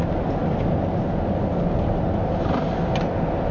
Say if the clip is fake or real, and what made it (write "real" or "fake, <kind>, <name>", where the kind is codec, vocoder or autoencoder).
real